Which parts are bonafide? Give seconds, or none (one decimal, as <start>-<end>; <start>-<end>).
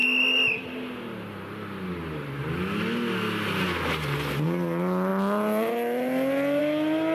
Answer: 0.0-7.1